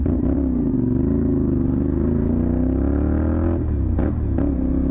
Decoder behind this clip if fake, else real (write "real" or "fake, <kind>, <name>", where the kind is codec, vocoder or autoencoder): real